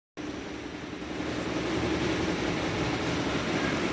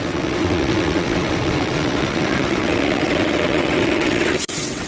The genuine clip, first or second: first